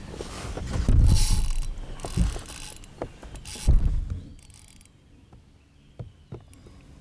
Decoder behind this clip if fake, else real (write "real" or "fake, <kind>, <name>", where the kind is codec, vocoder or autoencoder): real